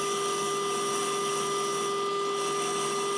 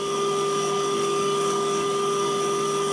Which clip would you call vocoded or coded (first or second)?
second